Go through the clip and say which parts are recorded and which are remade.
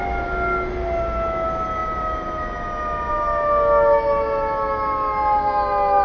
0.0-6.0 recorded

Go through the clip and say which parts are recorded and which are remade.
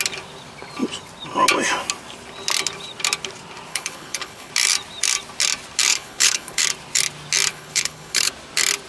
0.0-3.7 recorded; 3.7-4.5 remade; 4.5-5.9 recorded; 5.9-6.6 remade; 6.6-7.5 recorded; 7.5-8.3 remade; 8.3-8.9 recorded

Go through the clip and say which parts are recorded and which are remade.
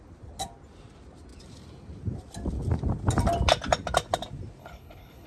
0.0-4.6 recorded; 4.6-5.3 remade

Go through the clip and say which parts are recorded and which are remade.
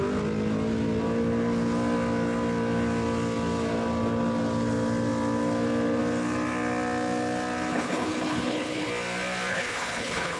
0.0-7.7 recorded; 7.7-8.9 remade; 8.9-9.5 recorded; 9.5-10.4 remade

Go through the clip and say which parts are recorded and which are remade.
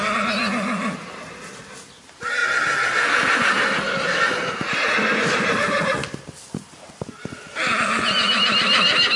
0.0-9.2 recorded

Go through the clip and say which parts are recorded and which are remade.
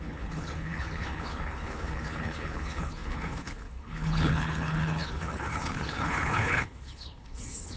0.0-7.8 remade